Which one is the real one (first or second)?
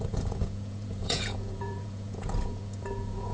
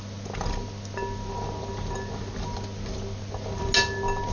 second